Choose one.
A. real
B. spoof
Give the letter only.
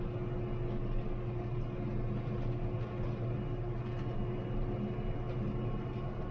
A